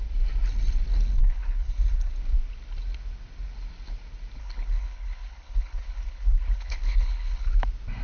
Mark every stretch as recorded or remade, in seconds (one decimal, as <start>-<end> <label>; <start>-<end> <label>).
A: 0.0-1.2 recorded; 1.2-2.1 remade; 2.1-4.4 recorded; 4.4-7.5 remade; 7.5-8.0 recorded